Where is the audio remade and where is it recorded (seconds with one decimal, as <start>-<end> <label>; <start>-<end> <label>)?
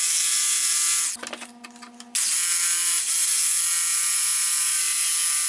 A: 0.0-3.9 recorded; 3.9-5.1 remade; 5.1-5.5 recorded